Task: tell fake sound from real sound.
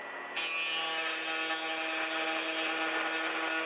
real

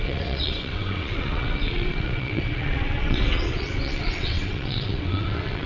fake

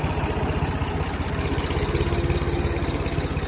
real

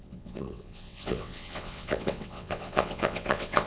fake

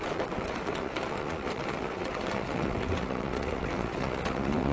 fake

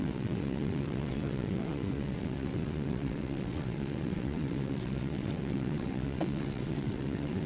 fake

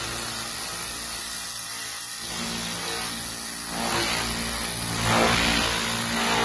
real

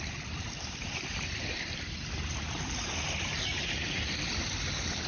real